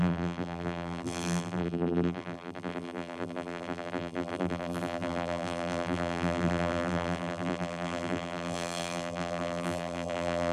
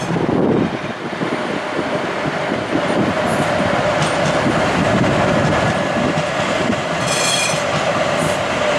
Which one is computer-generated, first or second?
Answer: first